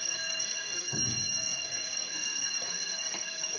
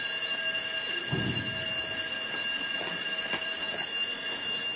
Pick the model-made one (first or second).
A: first